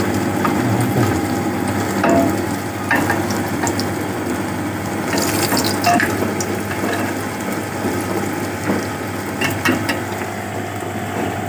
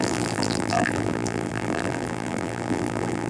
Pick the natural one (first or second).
first